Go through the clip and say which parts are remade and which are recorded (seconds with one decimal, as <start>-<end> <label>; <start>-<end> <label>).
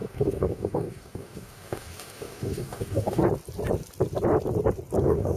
0.0-3.2 remade; 3.2-5.0 recorded; 5.0-5.4 remade